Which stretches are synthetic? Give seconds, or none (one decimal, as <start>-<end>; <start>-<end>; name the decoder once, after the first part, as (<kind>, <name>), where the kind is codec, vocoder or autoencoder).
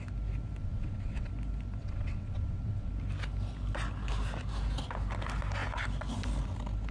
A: 0.6-1.3 (vocoder, WaveNeXt); 1.8-2.9